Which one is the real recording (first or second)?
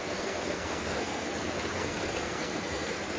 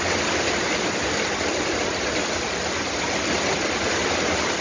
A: second